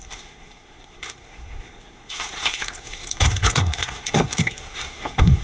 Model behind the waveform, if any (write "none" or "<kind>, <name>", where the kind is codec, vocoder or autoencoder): codec, SNAC